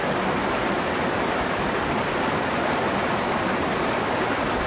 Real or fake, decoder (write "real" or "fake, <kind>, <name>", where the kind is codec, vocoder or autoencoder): real